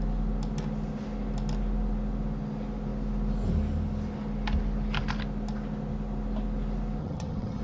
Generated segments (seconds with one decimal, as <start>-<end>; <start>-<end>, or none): 7.0-7.6